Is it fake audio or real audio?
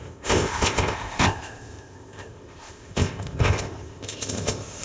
fake